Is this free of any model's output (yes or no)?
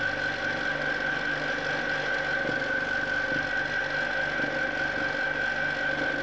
yes